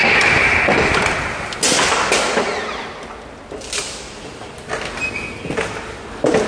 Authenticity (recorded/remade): recorded